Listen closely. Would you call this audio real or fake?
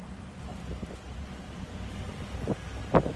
real